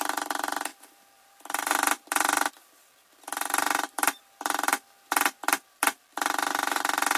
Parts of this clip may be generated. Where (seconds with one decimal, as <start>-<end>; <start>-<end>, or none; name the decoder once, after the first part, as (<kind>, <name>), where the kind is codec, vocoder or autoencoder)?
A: 0.0-7.2 (vocoder, BigVGAN v2)